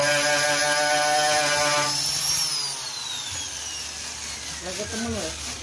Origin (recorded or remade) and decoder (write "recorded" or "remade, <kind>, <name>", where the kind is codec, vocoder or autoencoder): recorded